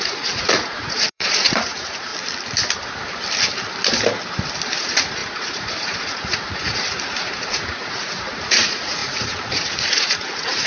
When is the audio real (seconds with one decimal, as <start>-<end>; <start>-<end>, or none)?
2.1-4.8